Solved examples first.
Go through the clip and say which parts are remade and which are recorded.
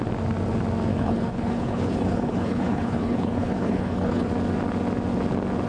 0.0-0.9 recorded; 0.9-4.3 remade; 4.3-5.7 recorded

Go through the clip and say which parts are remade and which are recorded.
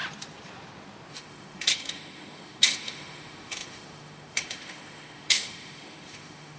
0.0-1.1 recorded; 1.1-6.6 remade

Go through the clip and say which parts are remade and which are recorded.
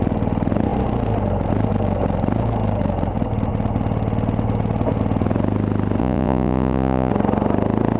0.0-6.0 recorded; 6.0-7.1 remade; 7.1-8.0 recorded